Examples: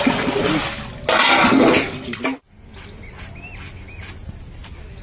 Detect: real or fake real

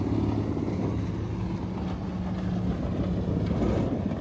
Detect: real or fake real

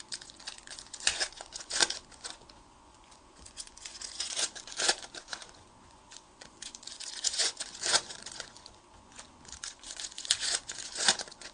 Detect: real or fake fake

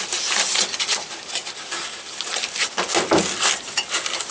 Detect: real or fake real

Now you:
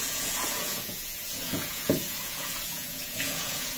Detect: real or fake fake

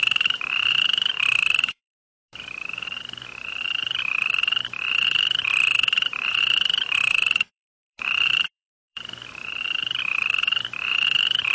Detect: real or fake fake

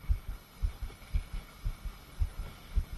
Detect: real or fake fake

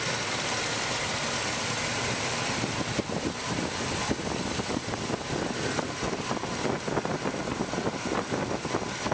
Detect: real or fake real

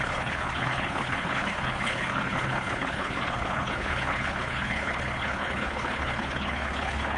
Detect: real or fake fake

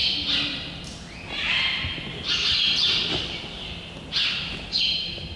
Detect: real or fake real